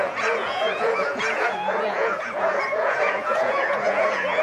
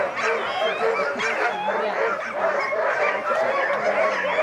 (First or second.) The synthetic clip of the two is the first